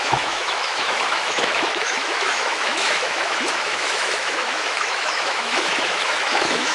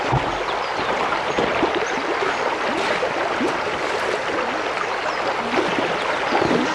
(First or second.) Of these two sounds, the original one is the second